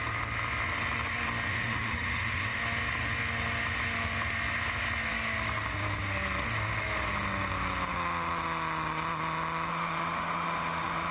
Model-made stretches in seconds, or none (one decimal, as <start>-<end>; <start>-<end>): 1.5-2.6; 9.7-11.1

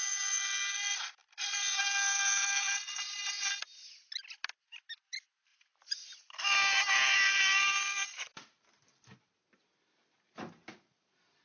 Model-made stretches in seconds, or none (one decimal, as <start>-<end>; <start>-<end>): none

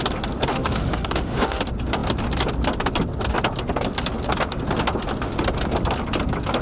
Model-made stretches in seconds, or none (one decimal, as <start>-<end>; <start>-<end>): 0.5-1.6

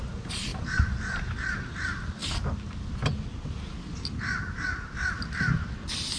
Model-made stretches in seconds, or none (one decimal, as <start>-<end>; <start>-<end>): none

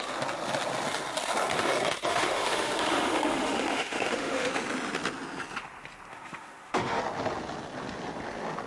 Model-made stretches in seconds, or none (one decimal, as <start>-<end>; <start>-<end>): 2.1-4.5; 6.1-7.0

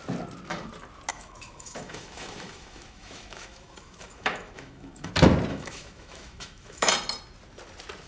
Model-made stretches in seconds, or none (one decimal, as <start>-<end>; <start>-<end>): 1.1-5.1; 5.5-6.9

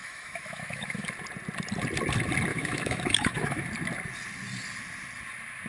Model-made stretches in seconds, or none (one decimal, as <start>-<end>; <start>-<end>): 0.0-1.1; 2.5-3.6

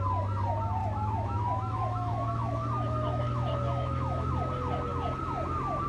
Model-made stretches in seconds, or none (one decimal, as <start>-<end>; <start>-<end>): 0.8-4.3